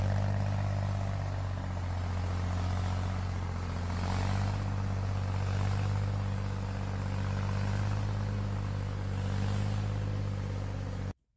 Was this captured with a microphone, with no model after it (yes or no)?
yes